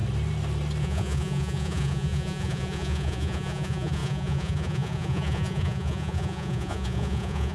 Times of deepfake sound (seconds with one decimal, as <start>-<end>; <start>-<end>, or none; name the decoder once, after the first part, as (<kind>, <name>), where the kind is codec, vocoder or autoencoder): 0.8-7.5 (vocoder, Vocos)